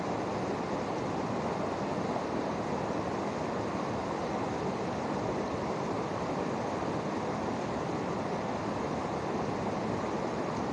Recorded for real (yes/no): yes